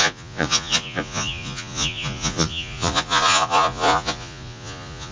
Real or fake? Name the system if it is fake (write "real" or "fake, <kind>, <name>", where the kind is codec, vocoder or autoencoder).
fake, vocoder, Vocos